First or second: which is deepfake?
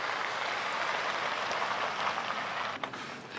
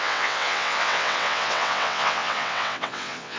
second